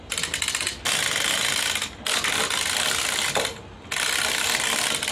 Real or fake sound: real